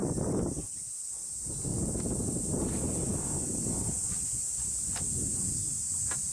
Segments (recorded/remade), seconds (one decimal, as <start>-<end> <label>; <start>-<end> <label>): 0.0-6.3 recorded